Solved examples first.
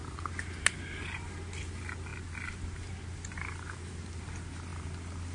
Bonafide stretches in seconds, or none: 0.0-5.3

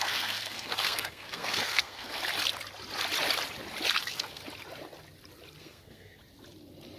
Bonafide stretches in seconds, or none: 2.2-4.0; 4.4-5.6; 6.2-7.0

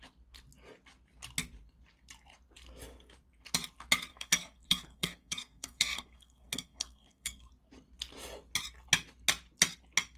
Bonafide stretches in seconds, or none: 0.0-4.1; 7.5-10.2